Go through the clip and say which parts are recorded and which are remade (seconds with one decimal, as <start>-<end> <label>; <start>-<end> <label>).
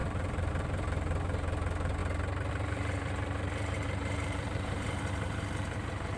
0.0-2.0 remade; 2.0-2.5 recorded; 2.5-6.2 remade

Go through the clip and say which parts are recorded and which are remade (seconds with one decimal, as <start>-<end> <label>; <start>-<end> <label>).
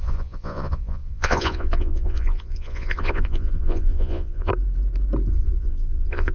0.0-4.5 remade; 4.5-5.3 recorded; 5.3-6.3 remade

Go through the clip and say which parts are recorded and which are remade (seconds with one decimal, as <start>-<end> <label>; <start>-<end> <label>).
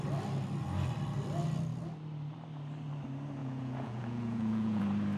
0.0-3.4 recorded; 3.4-4.8 remade; 4.8-5.2 recorded